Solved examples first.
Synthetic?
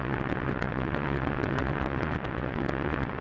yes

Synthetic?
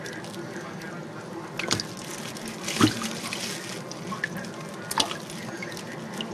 no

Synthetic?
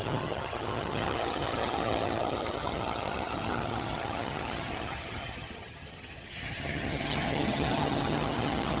yes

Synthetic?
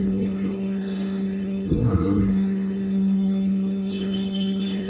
yes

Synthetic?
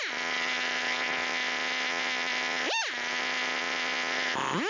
no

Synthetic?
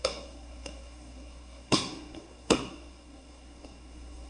yes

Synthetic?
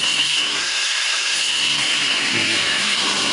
yes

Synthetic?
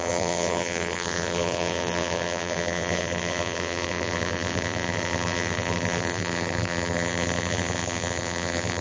yes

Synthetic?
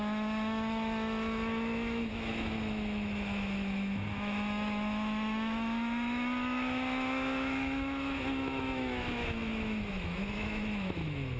yes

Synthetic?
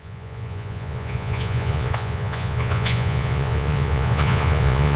yes